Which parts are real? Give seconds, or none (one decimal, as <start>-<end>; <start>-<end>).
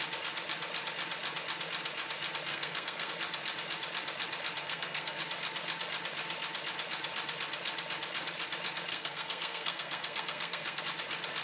0.0-2.5; 3.1-4.6; 5.2-8.9; 10.8-11.4